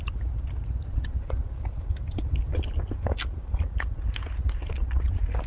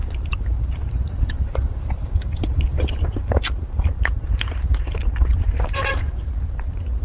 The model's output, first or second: second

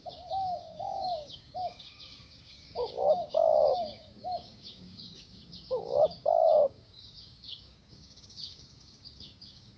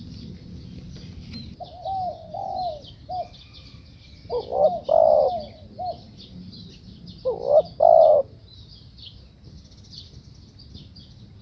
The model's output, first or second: first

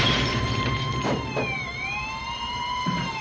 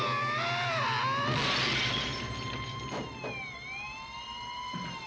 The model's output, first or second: first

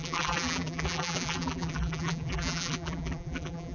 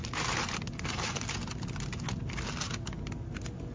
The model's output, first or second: first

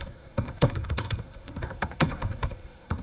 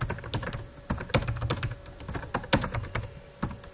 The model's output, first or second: first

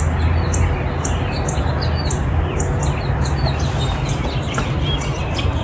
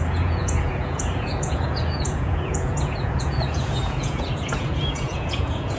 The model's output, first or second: second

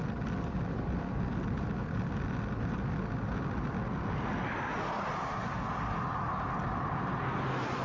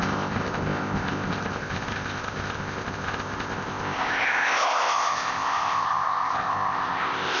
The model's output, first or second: second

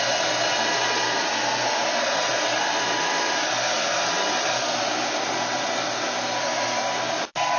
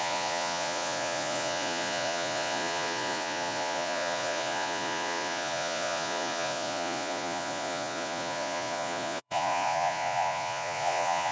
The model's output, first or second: second